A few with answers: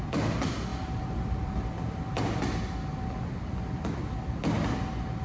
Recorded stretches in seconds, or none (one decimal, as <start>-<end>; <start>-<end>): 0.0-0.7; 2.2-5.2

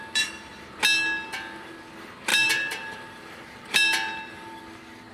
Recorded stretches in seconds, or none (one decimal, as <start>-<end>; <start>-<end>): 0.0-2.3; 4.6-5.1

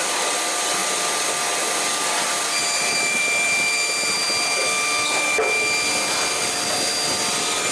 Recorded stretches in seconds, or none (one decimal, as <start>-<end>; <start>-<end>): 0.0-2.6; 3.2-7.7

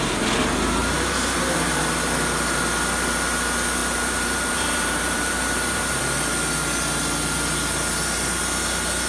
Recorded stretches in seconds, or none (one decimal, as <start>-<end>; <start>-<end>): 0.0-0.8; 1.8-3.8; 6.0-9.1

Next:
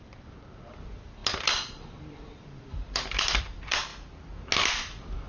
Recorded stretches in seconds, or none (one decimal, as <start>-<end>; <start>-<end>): 3.9-4.8